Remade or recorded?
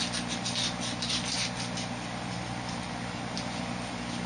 recorded